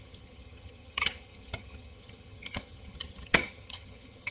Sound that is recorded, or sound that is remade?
remade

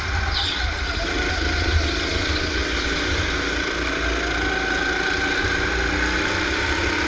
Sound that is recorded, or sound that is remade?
recorded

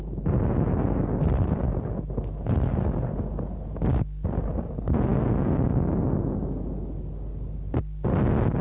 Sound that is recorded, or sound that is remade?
recorded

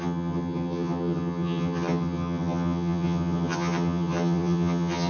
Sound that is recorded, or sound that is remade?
remade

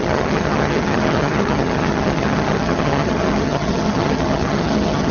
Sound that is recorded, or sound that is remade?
remade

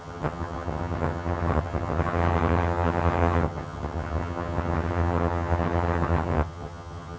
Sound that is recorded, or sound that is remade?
remade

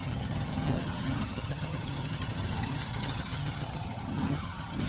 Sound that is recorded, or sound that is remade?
remade